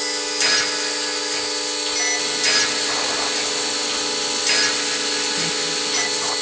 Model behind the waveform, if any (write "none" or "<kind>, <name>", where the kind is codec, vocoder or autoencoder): none